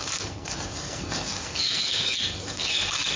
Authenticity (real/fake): fake